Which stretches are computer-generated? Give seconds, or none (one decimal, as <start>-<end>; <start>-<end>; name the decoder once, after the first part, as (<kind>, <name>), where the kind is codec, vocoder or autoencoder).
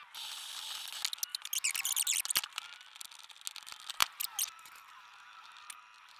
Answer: none